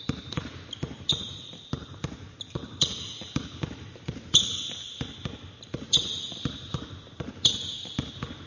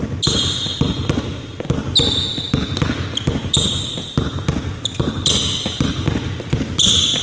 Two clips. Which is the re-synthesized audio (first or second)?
first